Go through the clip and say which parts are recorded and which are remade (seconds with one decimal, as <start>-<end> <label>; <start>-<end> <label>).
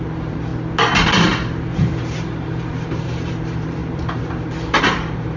0.0-0.5 remade; 0.5-1.7 recorded; 1.7-5.4 remade